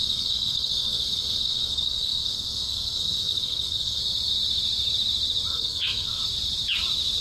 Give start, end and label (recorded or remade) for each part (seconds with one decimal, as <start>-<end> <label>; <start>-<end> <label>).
0.0-4.0 remade; 4.0-5.5 recorded; 5.5-6.2 remade; 6.2-7.2 recorded